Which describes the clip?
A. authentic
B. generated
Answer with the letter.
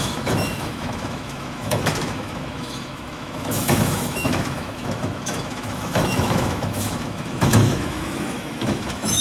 B